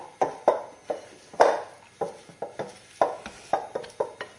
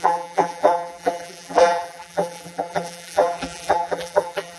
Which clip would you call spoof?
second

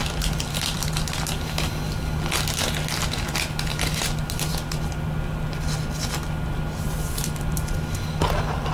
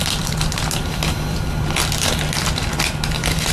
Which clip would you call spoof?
second